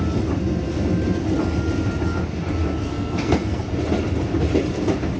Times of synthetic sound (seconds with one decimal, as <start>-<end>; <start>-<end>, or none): 2.8-3.6